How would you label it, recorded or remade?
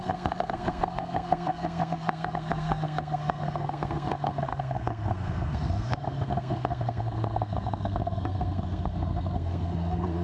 remade